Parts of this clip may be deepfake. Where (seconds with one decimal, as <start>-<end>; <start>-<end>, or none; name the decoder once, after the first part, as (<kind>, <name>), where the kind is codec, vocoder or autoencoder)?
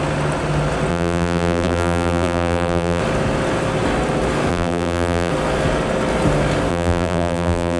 0.9-3.0 (vocoder, BigVGAN v2); 4.5-5.3; 6.7-7.8